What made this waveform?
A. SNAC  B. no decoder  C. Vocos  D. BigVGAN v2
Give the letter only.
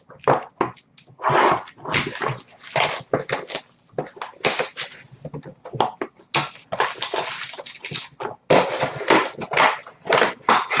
B